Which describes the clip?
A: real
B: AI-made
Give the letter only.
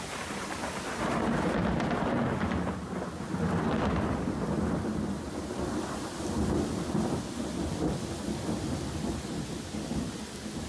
A